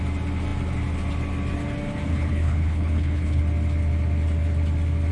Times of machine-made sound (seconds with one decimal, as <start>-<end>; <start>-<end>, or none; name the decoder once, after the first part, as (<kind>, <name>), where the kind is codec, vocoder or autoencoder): 2.1-3.4 (codec, HILCodec)